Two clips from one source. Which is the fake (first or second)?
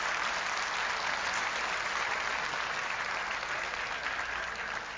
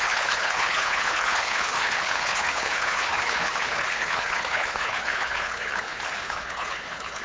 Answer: second